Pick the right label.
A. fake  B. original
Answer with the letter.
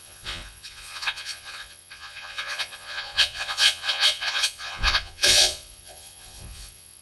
A